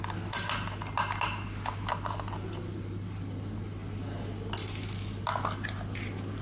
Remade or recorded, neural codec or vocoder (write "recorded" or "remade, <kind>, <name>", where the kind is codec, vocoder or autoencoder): recorded